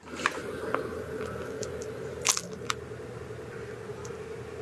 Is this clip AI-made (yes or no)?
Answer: no